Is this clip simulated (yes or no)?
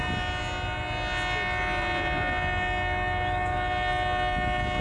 no